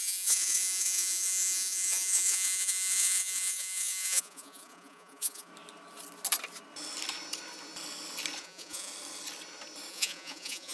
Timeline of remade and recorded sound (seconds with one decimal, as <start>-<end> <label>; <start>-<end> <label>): 0.0-5.5 remade; 5.5-8.4 recorded; 8.4-8.9 remade; 8.9-9.9 recorded; 9.9-10.7 remade